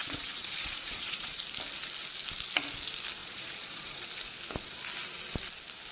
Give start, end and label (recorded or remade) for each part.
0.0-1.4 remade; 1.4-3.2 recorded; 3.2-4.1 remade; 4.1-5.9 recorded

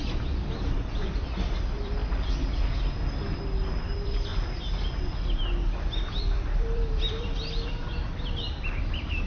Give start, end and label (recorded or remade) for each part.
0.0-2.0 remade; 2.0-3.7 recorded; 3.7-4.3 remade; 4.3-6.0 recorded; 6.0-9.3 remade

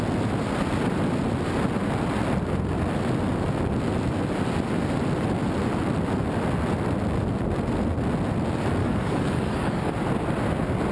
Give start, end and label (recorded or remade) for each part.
0.0-8.8 recorded; 8.8-9.9 remade; 9.9-10.9 recorded

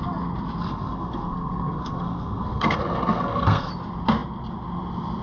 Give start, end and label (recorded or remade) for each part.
0.0-0.6 recorded; 0.6-3.7 remade; 3.7-5.2 recorded

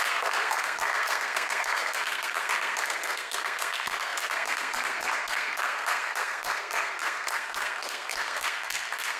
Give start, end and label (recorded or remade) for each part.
0.0-9.2 remade

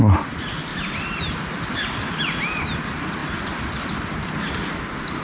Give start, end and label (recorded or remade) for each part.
0.0-3.2 recorded; 3.2-4.8 remade; 4.8-5.2 recorded